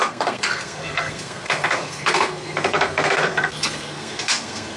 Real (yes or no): no